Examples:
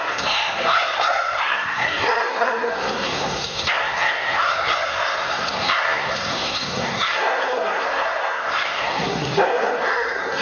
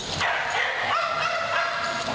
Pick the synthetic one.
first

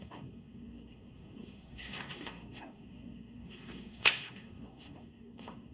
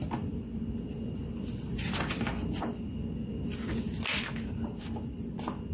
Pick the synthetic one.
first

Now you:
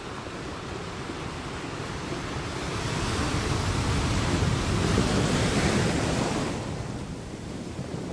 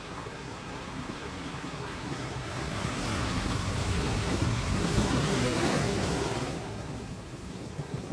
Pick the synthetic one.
second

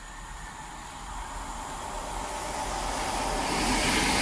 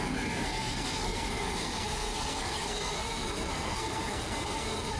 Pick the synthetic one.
second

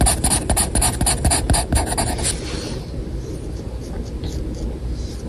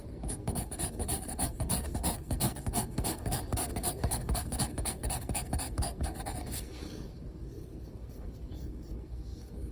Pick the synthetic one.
second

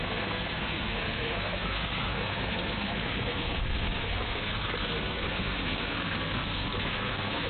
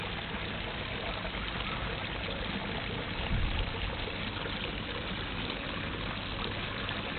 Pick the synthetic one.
first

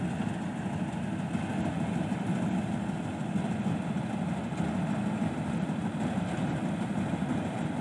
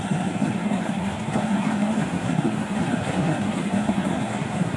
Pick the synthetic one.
second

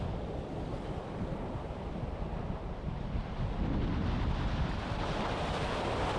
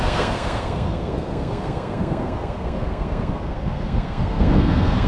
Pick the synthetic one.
second